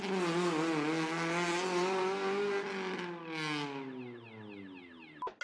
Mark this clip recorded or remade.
recorded